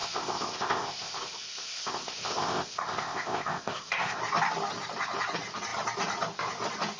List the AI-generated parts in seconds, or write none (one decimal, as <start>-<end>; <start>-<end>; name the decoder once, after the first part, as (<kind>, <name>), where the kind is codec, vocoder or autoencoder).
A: 0.0-4.2 (codec, ZipCodec)